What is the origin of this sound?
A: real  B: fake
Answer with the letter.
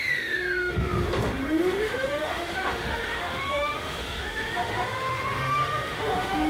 B